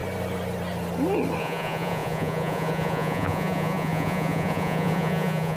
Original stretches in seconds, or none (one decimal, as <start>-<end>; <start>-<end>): 0.0-1.4